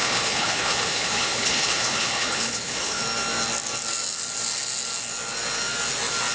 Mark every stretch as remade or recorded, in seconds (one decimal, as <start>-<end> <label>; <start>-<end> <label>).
0.0-3.0 remade; 3.0-6.3 recorded